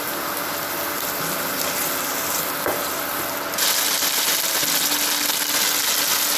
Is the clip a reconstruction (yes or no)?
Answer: no